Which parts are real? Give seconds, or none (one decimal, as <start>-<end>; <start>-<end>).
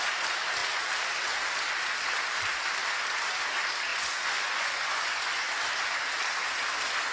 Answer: 0.0-3.9; 5.5-7.1